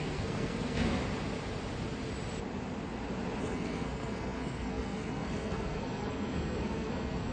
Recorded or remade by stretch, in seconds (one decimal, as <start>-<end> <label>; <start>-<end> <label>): 0.0-1.0 remade; 1.0-3.4 recorded; 3.4-7.3 remade